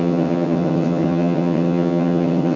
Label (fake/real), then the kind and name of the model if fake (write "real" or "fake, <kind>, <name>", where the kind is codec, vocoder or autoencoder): fake, vocoder, HiFi-GAN